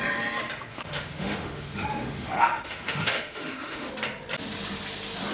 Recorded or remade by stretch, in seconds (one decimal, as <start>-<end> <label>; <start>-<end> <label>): 0.0-0.7 recorded; 0.7-3.9 remade; 3.9-5.3 recorded